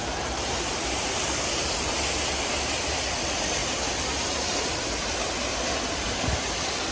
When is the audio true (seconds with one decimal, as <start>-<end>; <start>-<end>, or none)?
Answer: 1.8-6.9